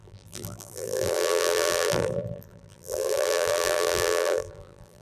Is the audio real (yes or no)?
no